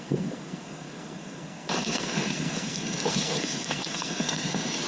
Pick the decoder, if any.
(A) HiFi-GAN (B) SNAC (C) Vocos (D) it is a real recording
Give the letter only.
B